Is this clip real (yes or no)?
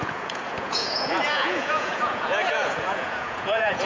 no